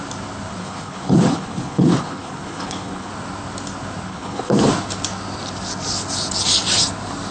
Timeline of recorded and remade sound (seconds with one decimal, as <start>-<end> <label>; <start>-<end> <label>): 0.0-0.6 recorded; 0.6-3.1 remade; 3.1-4.1 recorded; 4.1-4.7 remade; 4.7-7.3 recorded